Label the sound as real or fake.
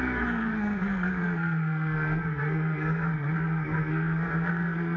fake